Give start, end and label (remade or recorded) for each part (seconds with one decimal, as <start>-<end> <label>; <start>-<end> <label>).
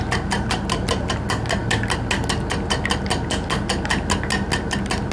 0.0-5.1 recorded